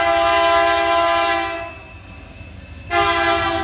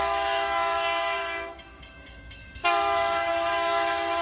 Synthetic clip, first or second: second